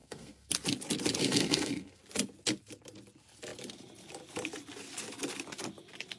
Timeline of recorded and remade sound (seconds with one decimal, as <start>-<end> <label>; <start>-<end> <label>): 0.0-0.5 remade; 0.5-1.2 recorded; 1.2-2.0 remade; 2.0-6.2 recorded